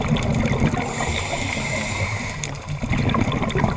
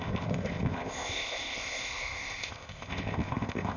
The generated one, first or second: second